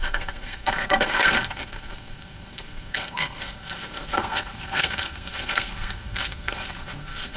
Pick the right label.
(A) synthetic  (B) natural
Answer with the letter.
A